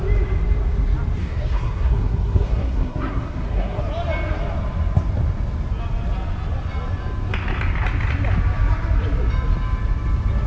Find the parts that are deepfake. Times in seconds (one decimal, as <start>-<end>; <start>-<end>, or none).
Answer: 1.2-3.8